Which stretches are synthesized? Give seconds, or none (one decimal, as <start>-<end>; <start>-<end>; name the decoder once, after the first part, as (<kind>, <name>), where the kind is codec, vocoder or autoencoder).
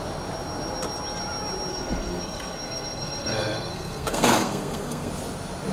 1.7-5.1 (codec, SNAC)